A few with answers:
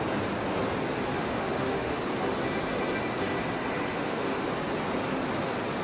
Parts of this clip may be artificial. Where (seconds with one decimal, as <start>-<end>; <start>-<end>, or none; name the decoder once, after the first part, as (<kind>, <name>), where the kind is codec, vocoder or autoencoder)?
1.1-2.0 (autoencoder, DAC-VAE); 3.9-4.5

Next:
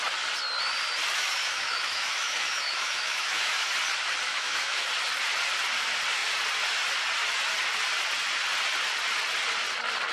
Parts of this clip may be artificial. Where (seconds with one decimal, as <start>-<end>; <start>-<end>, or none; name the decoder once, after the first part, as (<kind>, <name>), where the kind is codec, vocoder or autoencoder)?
1.2-3.7 (autoencoder, DAC-VAE); 4.3-4.9

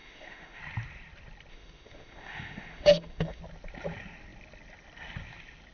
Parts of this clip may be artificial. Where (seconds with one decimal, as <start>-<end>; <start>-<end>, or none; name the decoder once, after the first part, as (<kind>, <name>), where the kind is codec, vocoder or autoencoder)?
0.0-0.6 (autoencoder, DAC-VAE); 1.5-3.4